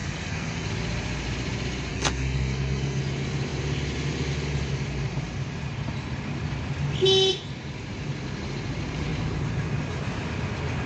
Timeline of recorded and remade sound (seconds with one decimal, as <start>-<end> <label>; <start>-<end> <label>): 0.0-0.7 remade; 0.7-1.9 recorded; 1.9-3.0 remade; 3.0-10.9 recorded